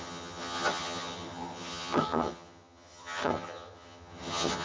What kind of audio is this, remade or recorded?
remade